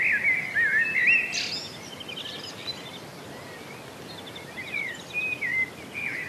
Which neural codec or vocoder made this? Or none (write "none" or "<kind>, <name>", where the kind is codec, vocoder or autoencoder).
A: none